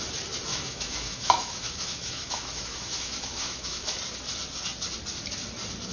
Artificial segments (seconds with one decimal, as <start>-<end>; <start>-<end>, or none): 0.5-4.0